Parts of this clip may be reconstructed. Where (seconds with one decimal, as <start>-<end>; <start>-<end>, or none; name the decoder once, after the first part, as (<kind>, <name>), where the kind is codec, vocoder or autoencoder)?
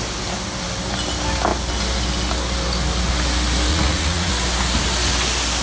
3.7-4.3 (vocoder, Vocos)